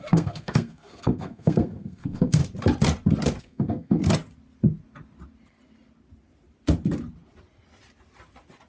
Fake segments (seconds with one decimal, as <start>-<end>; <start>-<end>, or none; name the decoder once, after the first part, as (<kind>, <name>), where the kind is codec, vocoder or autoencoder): 0.0-2.4 (codec, SNAC); 3.4-4.0